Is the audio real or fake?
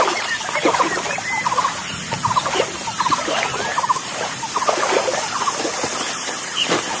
real